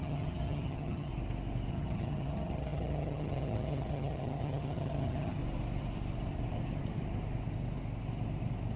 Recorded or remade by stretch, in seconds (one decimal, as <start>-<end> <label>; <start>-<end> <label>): 0.0-1.1 remade; 1.1-1.7 recorded; 1.7-5.4 remade; 5.4-8.8 recorded